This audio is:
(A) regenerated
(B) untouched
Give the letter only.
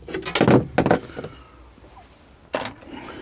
B